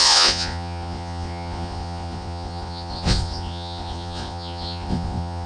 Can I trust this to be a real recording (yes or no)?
no